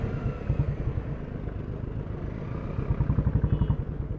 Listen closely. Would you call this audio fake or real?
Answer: real